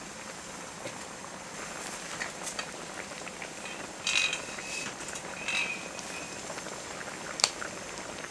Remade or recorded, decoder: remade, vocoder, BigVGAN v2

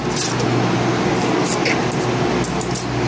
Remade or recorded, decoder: remade, vocoder, BigVGAN v2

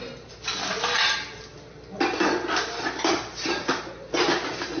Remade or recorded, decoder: recorded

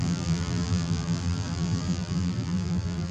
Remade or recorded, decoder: remade, vocoder, BigVGAN v2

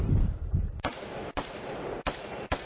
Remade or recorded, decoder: remade, vocoder, BigVGAN v2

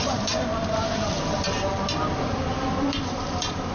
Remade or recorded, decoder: remade, vocoder, BigVGAN v2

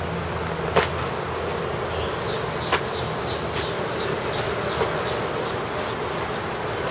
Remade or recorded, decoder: recorded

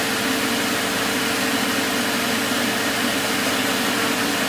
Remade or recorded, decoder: recorded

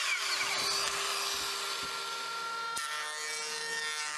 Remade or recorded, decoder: recorded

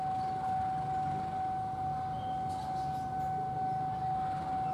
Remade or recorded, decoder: recorded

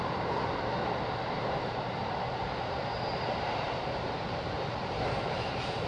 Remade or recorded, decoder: remade, vocoder, BigVGAN v2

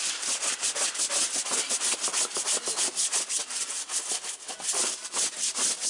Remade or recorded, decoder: recorded